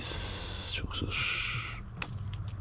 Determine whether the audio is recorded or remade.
recorded